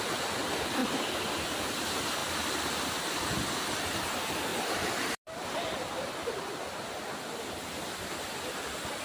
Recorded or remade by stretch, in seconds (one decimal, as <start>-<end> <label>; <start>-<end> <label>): 0.0-0.8 recorded; 0.8-1.3 remade; 1.3-2.2 recorded; 2.2-3.8 remade; 3.8-4.5 recorded; 4.5-7.0 remade; 7.0-9.0 recorded